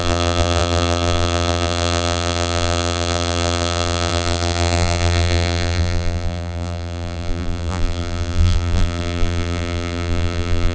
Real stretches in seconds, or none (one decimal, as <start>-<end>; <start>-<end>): none